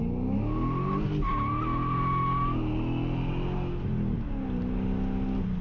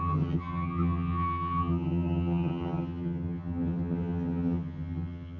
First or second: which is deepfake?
second